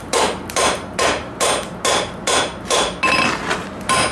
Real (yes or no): yes